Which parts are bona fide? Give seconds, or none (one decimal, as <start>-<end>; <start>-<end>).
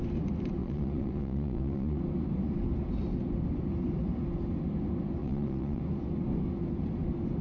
0.0-0.6; 2.0-5.2; 5.8-7.4